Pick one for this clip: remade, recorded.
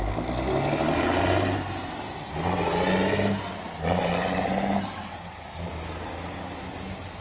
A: recorded